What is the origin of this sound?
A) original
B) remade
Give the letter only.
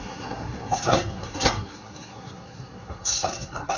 B